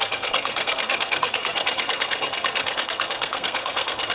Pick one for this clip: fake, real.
fake